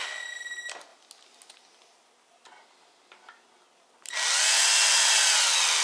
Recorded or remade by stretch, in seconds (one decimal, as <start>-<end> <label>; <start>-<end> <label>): 0.0-5.8 recorded